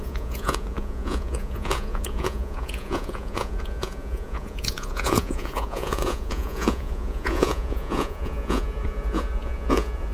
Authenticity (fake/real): fake